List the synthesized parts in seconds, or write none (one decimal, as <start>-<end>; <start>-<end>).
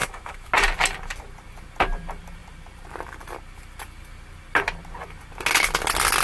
0.0-0.5